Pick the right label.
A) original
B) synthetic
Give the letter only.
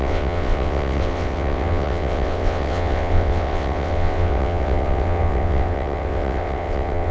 B